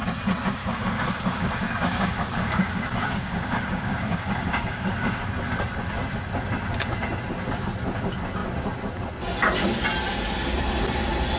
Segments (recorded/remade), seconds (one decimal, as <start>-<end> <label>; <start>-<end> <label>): 0.0-0.6 recorded; 0.6-5.2 remade; 5.2-11.4 recorded